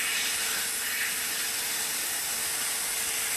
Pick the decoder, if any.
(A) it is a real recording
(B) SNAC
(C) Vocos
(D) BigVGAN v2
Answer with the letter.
A